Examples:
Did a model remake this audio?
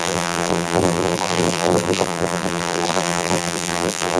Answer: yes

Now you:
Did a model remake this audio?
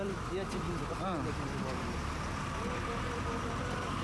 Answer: yes